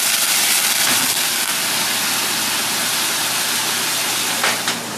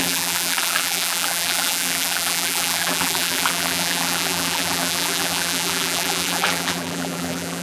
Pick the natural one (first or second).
first